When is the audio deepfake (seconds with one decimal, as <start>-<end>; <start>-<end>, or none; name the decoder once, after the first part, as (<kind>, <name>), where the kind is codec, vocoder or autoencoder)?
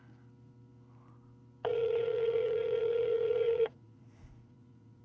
1.7-5.0 (vocoder, Vocos)